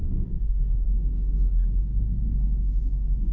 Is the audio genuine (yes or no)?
no